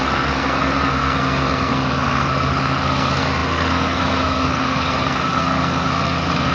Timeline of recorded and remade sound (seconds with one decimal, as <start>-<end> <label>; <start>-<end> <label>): 0.0-6.5 remade